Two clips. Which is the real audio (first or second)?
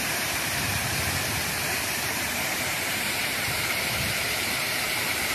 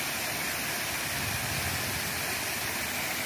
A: second